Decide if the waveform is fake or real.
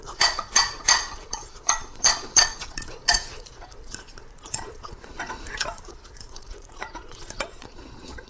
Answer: fake